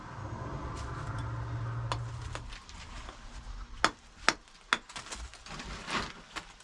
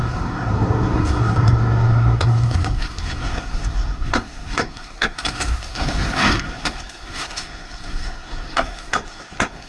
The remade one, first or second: second